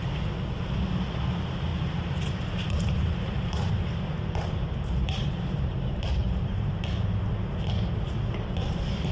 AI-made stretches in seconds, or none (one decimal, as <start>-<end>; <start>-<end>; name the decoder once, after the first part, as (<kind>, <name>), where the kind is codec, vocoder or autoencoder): 1.7-5.6 (vocoder, BigVGAN v2); 6.2-6.8